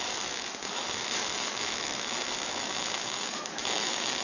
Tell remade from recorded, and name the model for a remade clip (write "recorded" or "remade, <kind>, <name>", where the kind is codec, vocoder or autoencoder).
remade, autoencoder, DAC-VAE